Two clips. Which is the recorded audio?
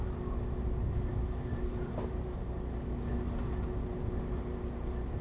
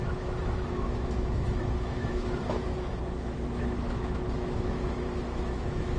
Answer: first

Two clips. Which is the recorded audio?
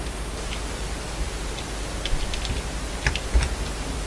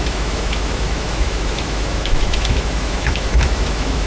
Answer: first